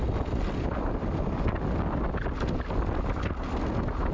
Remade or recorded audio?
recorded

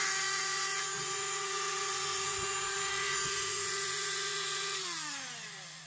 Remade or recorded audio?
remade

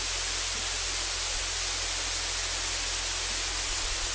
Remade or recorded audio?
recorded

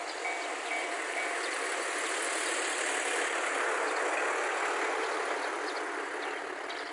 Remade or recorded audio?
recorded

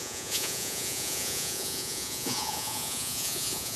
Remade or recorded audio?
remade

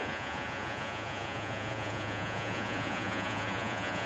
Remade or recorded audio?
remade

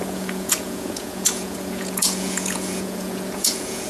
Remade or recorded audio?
remade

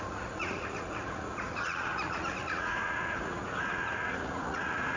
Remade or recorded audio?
remade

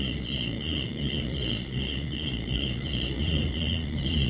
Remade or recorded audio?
remade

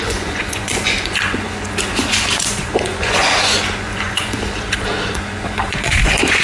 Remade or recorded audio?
remade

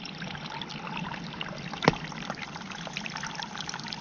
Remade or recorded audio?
recorded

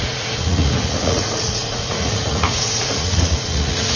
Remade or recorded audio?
remade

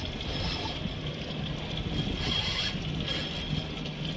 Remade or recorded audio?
recorded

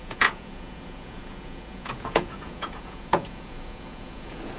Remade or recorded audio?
remade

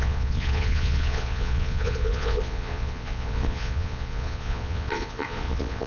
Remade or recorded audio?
remade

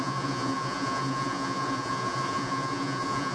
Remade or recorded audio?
remade